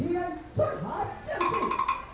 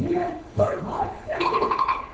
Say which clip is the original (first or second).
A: first